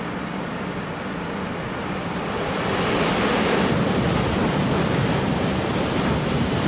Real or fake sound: fake